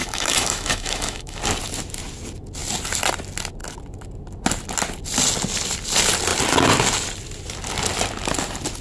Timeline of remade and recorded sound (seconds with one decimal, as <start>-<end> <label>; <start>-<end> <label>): 0.0-1.4 remade; 1.4-8.8 recorded